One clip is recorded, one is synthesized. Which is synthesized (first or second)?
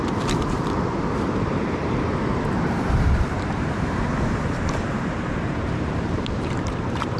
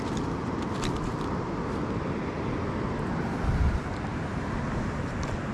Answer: first